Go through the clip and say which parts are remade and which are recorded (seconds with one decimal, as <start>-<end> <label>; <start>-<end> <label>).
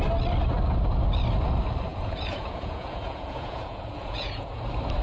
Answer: 0.0-1.9 recorded; 1.9-4.6 remade; 4.6-5.0 recorded